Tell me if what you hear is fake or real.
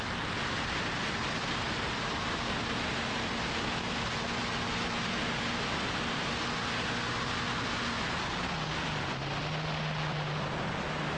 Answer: real